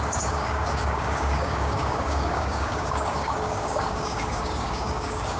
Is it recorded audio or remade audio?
remade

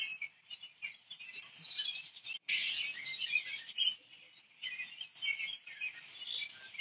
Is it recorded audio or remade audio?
recorded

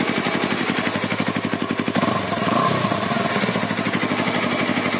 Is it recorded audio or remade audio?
recorded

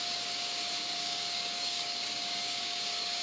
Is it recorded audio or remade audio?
remade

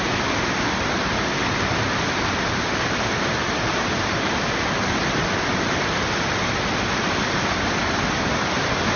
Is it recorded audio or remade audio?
recorded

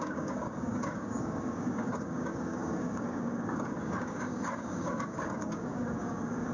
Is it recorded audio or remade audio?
remade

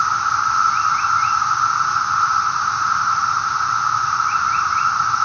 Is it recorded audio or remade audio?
recorded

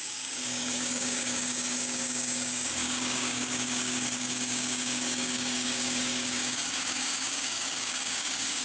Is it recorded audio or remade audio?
remade